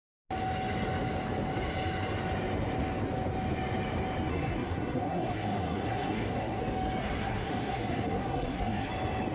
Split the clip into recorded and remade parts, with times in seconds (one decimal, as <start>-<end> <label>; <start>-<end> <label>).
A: 0.0-4.3 recorded; 4.3-6.6 remade; 6.6-7.0 recorded; 7.0-8.9 remade; 8.9-9.3 recorded

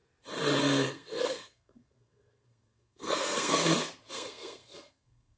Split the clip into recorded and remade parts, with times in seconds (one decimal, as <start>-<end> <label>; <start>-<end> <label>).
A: 0.0-0.6 recorded; 0.6-3.6 remade; 3.6-4.1 recorded; 4.1-5.4 remade

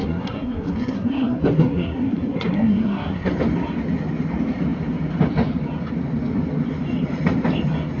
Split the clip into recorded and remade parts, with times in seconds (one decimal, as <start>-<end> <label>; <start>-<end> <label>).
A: 0.0-3.3 remade; 3.3-8.0 recorded